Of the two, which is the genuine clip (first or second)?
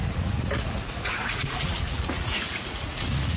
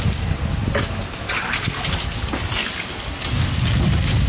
second